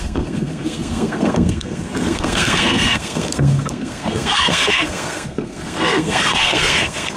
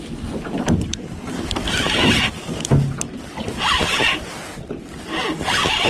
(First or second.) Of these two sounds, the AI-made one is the first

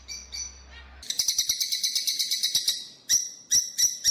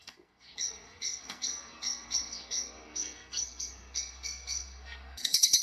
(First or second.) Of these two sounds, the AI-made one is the second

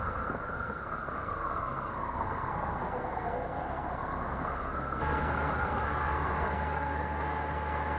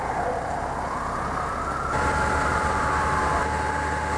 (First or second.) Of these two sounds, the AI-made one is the first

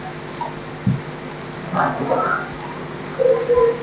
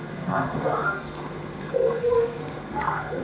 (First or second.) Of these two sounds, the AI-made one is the second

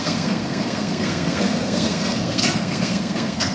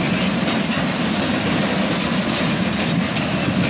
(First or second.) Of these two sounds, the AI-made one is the first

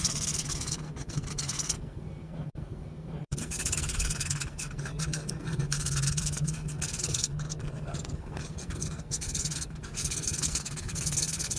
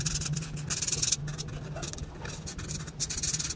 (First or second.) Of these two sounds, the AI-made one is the first